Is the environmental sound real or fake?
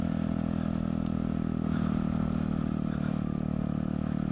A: real